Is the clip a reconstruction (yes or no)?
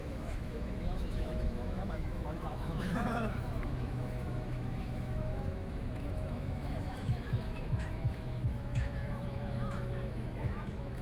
yes